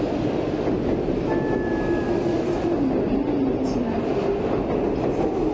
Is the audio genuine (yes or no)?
yes